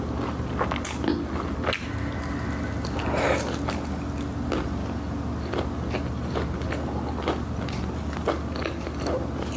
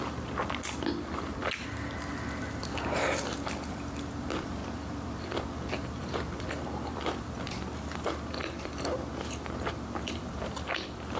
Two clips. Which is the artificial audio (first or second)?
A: second